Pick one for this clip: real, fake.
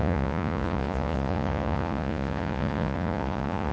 fake